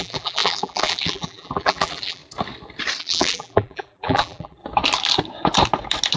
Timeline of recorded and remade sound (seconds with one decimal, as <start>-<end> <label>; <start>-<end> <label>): 0.0-2.2 remade; 2.2-3.0 recorded; 3.0-4.6 remade; 4.6-6.2 recorded